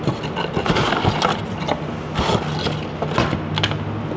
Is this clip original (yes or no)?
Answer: yes